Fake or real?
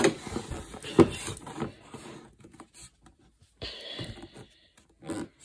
real